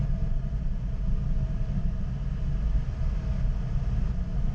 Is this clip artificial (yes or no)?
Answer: no